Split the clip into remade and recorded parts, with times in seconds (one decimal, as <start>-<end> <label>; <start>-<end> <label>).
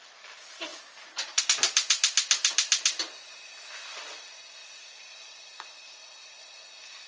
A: 0.0-4.6 recorded; 4.6-6.4 remade; 6.4-7.1 recorded